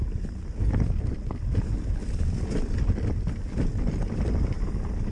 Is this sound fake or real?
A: real